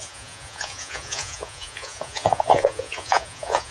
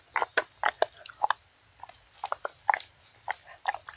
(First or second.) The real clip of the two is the second